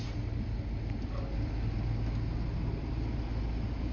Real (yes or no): yes